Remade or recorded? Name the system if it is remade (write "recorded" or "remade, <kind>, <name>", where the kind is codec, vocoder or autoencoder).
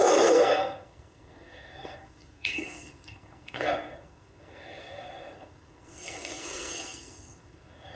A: remade, codec, SNAC